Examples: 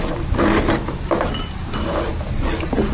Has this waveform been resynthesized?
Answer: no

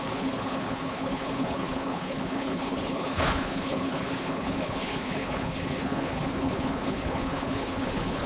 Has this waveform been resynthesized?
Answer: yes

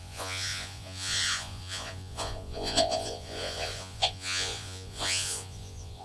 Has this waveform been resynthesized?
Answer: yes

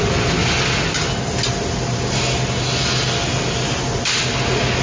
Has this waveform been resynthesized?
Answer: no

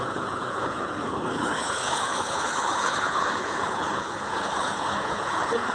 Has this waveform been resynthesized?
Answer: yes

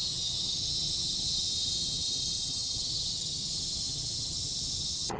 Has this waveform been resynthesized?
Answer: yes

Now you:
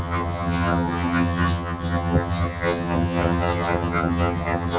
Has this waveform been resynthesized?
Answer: yes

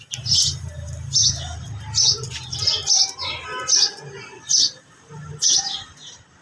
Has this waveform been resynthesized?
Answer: no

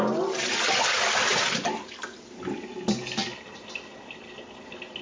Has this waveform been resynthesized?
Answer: no